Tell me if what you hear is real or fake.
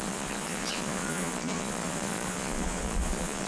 fake